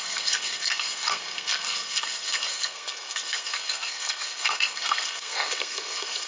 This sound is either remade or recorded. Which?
remade